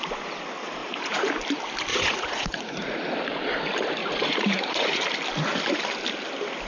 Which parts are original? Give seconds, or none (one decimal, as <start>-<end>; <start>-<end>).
0.0-0.8; 1.3-1.9; 3.0-4.0; 5.0-6.7